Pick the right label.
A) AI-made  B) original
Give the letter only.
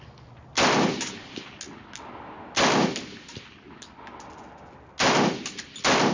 B